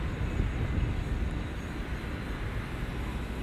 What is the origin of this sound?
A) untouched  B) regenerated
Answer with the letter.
A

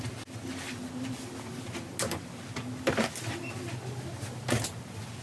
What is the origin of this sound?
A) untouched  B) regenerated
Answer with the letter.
A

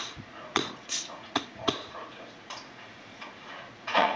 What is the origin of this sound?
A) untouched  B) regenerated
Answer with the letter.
B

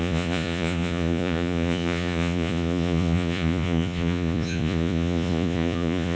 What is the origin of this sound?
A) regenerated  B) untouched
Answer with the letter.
A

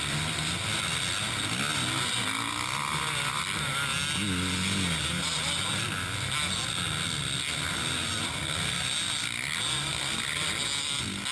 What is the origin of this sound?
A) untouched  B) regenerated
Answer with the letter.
A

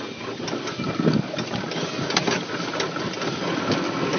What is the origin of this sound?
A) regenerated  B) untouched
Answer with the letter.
B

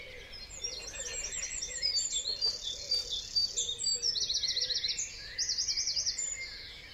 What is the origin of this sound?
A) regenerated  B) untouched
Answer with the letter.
B